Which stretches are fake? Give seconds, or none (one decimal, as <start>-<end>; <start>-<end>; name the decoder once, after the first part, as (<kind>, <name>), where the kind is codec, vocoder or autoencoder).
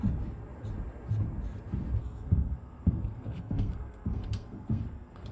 2.0-5.3 (codec, SNAC)